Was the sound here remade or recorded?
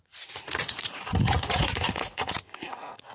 remade